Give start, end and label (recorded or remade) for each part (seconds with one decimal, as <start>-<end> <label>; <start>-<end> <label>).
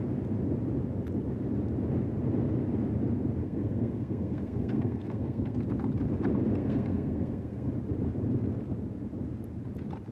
0.0-3.4 recorded; 3.4-5.6 remade; 5.6-6.6 recorded; 6.6-7.7 remade; 7.7-10.1 recorded